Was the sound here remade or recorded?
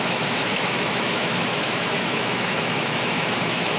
remade